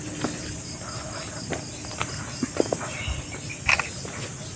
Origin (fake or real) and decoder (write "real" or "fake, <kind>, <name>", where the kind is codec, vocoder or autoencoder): real